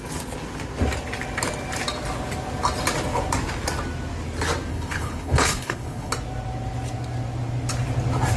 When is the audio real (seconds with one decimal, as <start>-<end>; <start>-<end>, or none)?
0.0-4.7; 6.1-8.4